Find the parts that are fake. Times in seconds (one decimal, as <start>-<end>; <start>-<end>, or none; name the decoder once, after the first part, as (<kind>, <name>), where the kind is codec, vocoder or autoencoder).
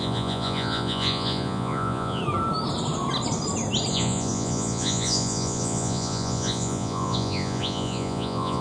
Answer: 0.0-2.2 (vocoder, Vocos); 3.9-8.6